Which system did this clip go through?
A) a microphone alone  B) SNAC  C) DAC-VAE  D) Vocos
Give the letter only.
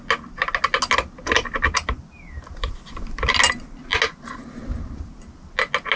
A